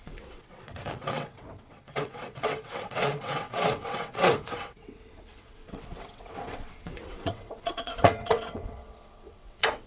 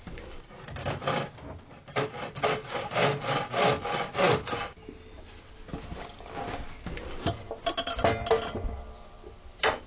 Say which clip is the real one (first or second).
second